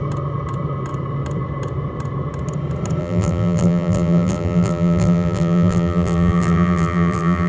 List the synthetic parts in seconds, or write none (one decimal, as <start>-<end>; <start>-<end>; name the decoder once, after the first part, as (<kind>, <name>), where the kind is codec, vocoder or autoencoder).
3.0-7.5 (vocoder, BigVGAN v2)